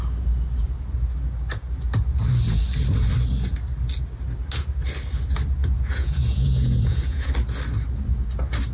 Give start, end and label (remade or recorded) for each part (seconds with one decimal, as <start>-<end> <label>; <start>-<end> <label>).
0.0-5.6 recorded; 5.6-7.3 remade; 7.3-8.7 recorded